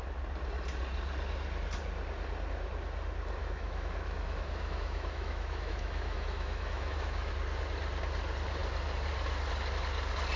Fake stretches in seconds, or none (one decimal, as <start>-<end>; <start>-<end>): 3.4-7.3